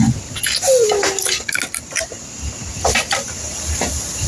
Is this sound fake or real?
real